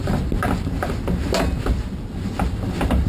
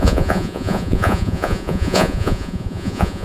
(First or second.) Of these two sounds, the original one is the first